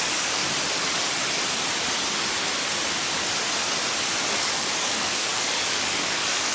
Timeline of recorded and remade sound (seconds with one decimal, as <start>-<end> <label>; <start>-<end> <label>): 0.0-0.4 remade; 0.4-4.3 recorded; 4.3-6.5 remade